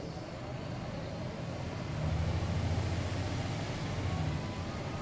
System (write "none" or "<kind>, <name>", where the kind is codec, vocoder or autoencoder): none